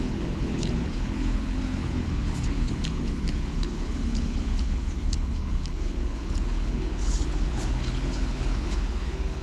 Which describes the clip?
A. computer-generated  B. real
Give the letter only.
A